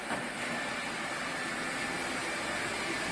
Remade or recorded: recorded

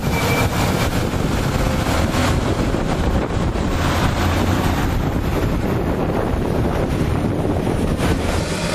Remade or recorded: remade